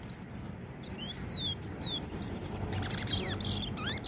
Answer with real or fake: fake